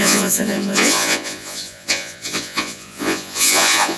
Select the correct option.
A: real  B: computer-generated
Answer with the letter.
B